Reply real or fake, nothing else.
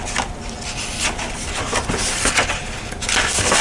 real